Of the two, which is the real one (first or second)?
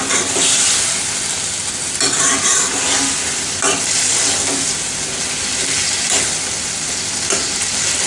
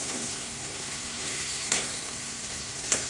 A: first